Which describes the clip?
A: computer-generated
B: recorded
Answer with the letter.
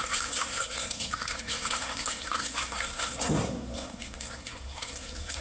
A